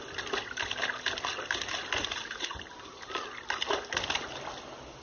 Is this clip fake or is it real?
real